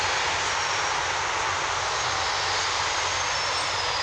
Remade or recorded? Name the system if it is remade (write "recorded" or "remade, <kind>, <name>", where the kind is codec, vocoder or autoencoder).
recorded